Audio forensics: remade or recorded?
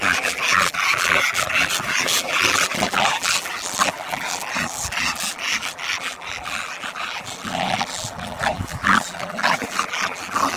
remade